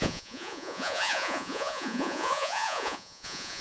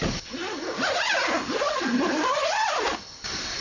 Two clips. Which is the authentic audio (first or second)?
second